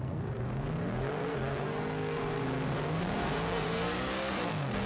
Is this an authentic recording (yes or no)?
no